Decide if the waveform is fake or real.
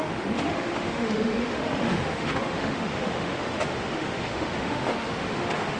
fake